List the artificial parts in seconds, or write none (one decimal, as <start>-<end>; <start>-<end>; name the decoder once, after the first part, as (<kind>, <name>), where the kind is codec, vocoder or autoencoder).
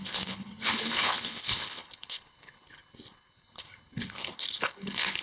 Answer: 0.0-5.2 (codec, HILCodec)